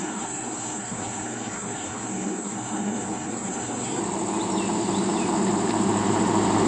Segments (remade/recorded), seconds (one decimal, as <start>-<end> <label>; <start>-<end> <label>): 0.0-4.0 remade; 4.0-6.7 recorded